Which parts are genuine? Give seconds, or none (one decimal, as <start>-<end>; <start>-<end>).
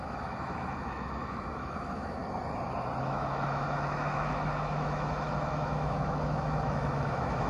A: 2.2-3.0